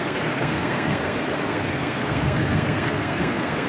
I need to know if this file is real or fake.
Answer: fake